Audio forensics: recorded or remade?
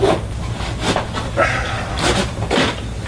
recorded